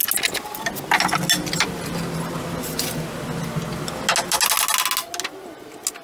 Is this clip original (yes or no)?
yes